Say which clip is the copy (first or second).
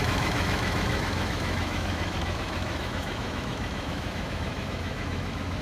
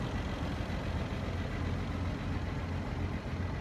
first